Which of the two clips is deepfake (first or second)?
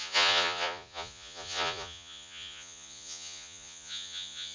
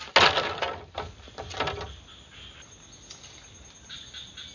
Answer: first